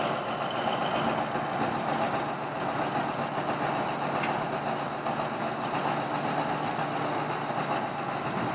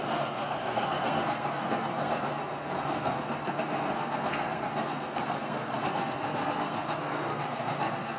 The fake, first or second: second